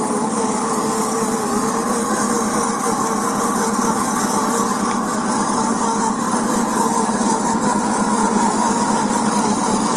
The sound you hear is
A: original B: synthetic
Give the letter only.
B